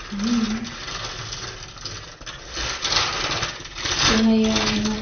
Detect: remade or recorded recorded